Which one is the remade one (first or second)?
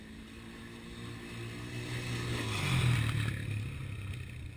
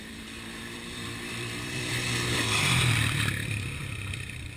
second